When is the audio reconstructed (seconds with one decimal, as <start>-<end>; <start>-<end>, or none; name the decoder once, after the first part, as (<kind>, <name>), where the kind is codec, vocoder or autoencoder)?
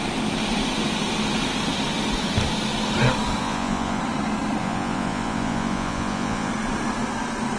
3.4-4.0 (vocoder, Vocos); 4.6-6.5